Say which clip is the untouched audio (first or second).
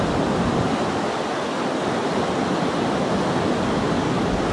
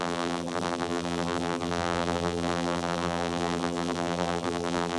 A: first